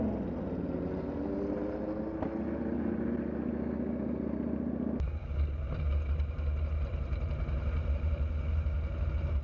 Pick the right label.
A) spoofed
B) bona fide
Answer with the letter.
B